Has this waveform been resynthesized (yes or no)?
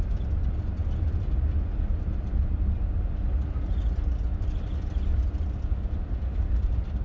no